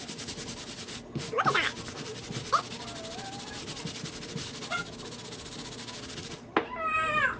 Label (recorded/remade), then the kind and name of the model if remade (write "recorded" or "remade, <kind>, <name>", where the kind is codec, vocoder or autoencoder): recorded